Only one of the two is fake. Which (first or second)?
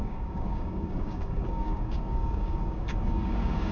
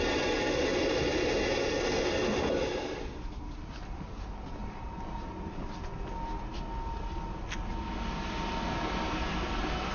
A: first